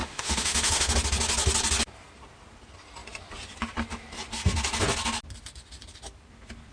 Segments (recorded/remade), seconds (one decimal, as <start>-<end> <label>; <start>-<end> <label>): 0.0-0.9 remade; 0.9-6.7 recorded